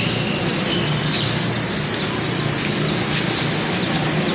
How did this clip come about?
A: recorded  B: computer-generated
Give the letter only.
A